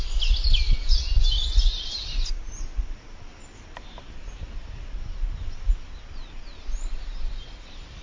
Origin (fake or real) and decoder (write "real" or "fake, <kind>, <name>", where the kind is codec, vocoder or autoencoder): real